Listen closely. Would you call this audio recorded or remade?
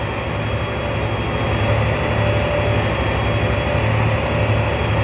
recorded